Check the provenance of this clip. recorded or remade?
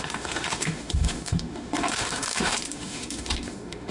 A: remade